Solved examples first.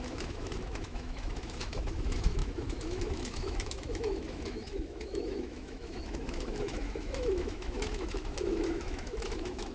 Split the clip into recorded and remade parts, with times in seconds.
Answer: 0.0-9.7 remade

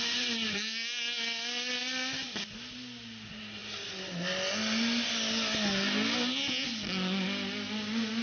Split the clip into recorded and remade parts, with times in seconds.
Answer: 0.0-8.2 recorded

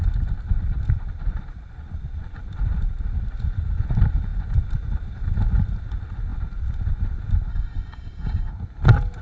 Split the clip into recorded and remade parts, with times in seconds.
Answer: 0.0-7.5 recorded; 7.5-8.5 remade; 8.5-9.2 recorded

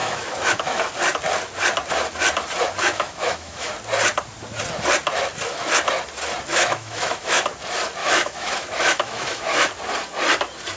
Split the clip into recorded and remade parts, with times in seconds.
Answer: 0.0-0.9 remade; 0.9-2.8 recorded; 2.8-3.7 remade; 3.7-6.5 recorded; 6.5-7.4 remade; 7.4-8.0 recorded; 8.0-9.7 remade; 9.7-10.8 recorded